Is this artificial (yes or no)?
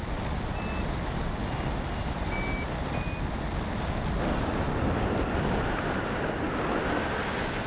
no